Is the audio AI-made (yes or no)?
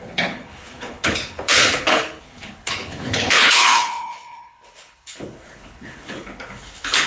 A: yes